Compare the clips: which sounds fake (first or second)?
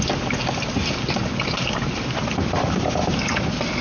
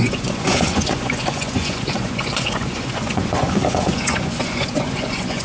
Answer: second